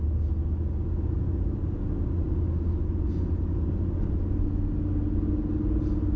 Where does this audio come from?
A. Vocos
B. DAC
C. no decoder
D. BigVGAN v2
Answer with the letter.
C